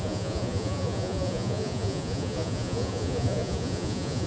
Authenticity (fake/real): fake